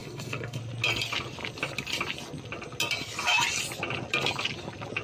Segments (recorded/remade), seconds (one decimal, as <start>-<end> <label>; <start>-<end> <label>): 0.0-0.6 remade; 0.6-5.0 recorded